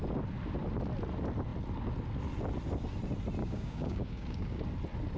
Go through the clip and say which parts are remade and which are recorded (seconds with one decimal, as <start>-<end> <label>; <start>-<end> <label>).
0.0-3.4 recorded; 3.4-4.6 remade; 4.6-5.2 recorded